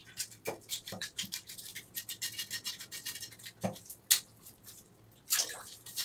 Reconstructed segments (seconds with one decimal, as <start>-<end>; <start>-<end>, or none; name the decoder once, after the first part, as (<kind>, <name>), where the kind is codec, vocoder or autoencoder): 0.6-1.7 (vocoder, BigVGAN v2); 5.3-6.0